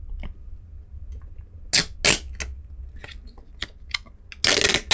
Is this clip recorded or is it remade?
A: recorded